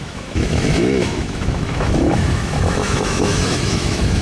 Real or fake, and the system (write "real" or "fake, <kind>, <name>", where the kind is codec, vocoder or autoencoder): fake, autoencoder, DAC-VAE